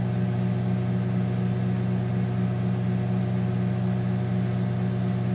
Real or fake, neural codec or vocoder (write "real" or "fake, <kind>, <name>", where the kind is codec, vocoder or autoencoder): real